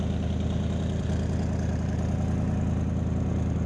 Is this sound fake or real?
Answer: real